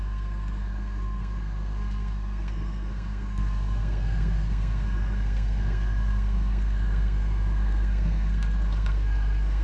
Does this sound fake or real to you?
fake